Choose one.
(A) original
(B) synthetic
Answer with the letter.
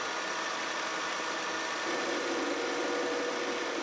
A